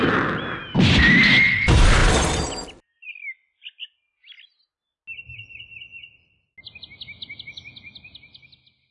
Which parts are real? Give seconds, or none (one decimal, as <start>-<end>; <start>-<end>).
0.0-8.9